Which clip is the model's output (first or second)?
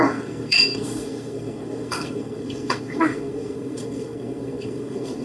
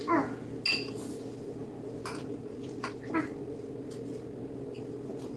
first